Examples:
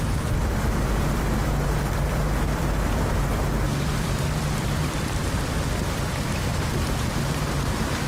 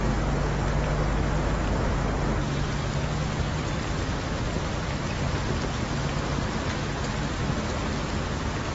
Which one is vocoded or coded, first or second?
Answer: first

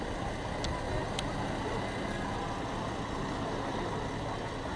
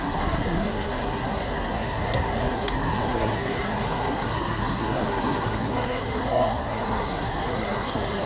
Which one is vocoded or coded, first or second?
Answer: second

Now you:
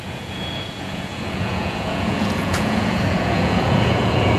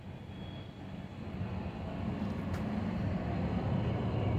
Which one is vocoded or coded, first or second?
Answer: first